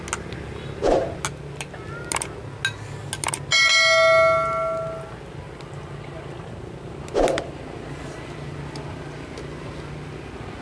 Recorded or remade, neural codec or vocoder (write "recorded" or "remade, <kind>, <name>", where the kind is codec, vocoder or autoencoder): recorded